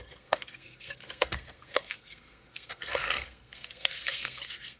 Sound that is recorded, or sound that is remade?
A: remade